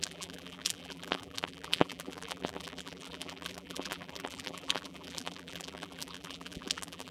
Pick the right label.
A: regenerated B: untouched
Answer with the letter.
A